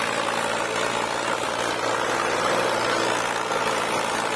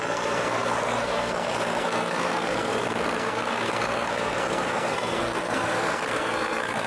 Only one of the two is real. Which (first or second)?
first